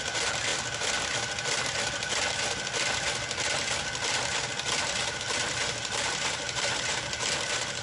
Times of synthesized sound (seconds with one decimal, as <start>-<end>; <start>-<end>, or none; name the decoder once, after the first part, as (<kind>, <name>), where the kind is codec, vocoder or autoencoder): 0.0-0.5 (vocoder, BigVGAN v2); 5.2-7.8